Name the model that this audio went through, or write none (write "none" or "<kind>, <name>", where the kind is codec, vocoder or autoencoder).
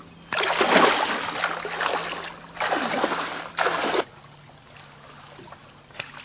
none